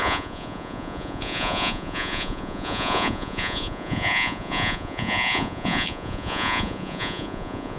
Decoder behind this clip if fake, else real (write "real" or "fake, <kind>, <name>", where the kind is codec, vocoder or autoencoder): fake, vocoder, Vocos